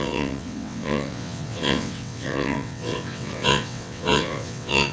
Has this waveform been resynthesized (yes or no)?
yes